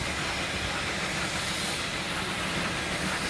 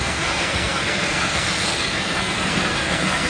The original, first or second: first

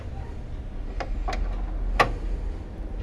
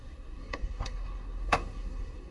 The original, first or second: first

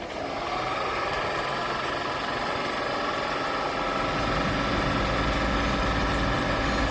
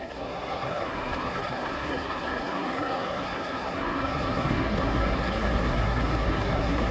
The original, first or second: first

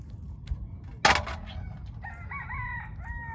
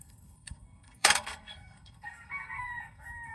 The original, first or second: first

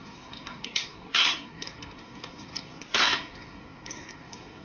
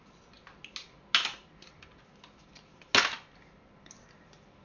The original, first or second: second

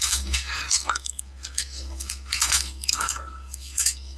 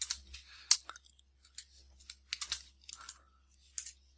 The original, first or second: second